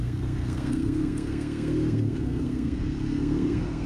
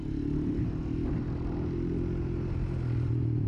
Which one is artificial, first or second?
first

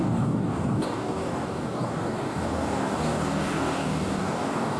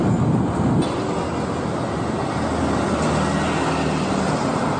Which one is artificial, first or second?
first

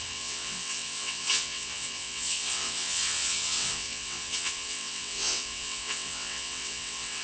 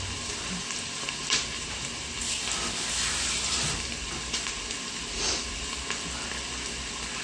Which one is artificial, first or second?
first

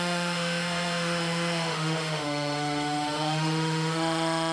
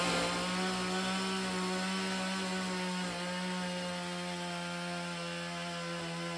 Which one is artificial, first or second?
first